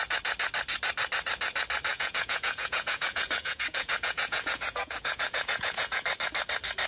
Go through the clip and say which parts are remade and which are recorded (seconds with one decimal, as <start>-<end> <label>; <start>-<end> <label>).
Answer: 0.0-1.9 recorded; 1.9-6.0 remade; 6.0-6.9 recorded